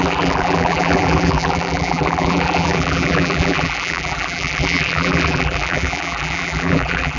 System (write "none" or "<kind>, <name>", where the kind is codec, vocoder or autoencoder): vocoder, BigVGAN v2